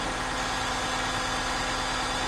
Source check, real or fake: real